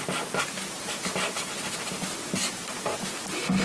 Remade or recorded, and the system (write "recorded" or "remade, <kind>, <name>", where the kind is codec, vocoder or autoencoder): recorded